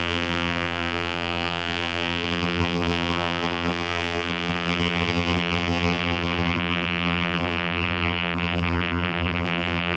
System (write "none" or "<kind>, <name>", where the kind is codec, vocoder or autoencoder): vocoder, BigVGAN v2